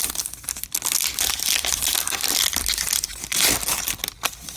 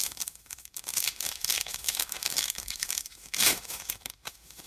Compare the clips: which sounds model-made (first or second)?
second